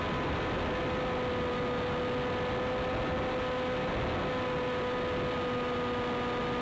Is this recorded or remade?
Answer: recorded